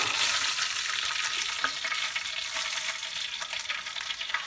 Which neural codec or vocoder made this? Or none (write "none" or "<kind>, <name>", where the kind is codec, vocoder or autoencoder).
none